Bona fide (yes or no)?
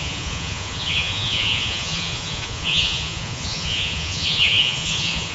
no